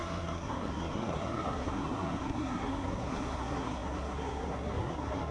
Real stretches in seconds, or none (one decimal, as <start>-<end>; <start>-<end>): none